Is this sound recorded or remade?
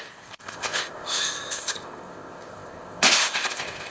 remade